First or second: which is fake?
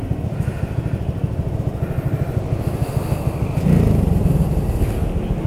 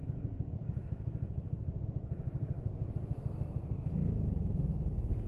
second